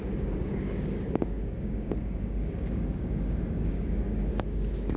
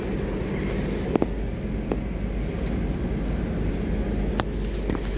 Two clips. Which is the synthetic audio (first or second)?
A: first